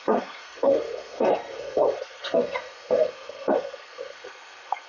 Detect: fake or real fake